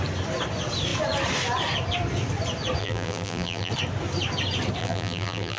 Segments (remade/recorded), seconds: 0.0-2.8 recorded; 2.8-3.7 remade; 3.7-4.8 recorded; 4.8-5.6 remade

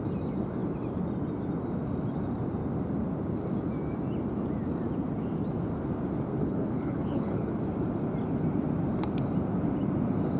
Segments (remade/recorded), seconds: 0.0-6.4 recorded; 6.4-7.6 remade; 7.6-10.4 recorded

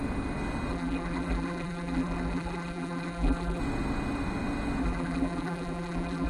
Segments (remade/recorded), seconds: 0.0-0.7 recorded; 0.7-3.6 remade; 3.6-4.8 recorded; 4.8-6.3 remade

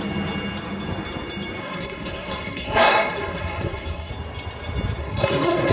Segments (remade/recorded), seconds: 0.0-1.6 recorded; 1.6-4.1 remade; 4.1-5.0 recorded; 5.0-5.7 remade

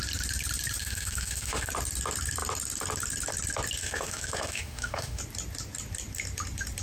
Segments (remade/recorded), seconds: 0.0-0.8 recorded; 0.8-1.7 remade; 1.7-3.8 recorded; 3.8-5.2 remade; 5.2-6.8 recorded

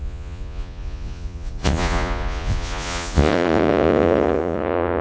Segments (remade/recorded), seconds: 0.0-5.0 remade

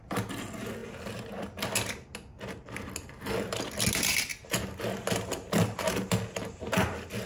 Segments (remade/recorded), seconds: 0.0-7.3 recorded

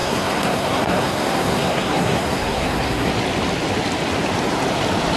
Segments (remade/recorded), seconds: 0.0-3.1 remade; 3.1-5.2 recorded